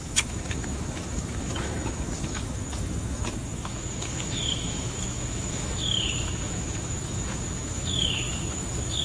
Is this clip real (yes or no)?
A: no